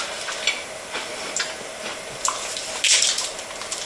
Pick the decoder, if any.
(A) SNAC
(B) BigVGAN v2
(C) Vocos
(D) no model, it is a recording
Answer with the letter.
D